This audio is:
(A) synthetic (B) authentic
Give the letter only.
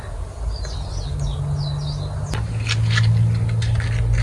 B